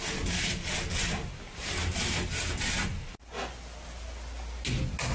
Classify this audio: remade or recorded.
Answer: recorded